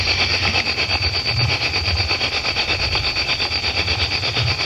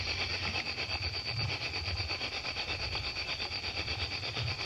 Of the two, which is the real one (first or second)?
first